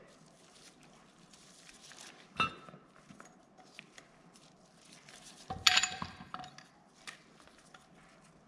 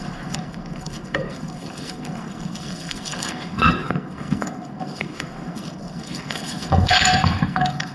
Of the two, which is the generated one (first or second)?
second